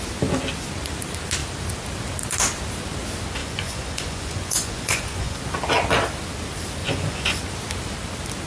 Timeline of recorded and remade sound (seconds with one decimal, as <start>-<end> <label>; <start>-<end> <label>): 0.0-3.4 recorded; 3.4-5.4 remade; 5.4-6.8 recorded; 6.8-7.4 remade; 7.4-8.5 recorded